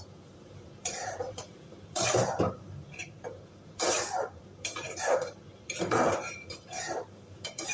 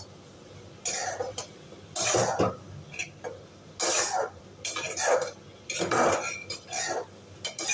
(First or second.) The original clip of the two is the second